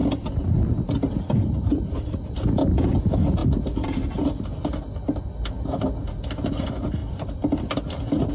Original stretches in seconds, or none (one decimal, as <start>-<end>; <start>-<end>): 0.0-7.0